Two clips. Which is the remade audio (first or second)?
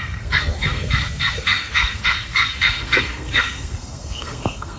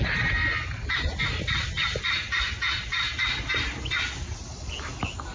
first